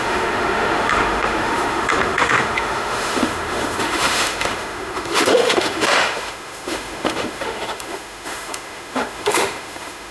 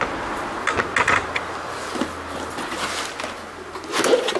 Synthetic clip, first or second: first